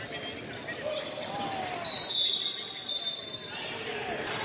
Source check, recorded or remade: recorded